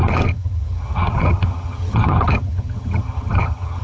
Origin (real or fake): fake